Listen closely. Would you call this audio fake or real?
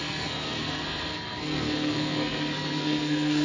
fake